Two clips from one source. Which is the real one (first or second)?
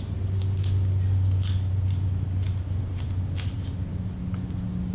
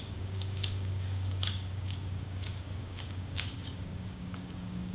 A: first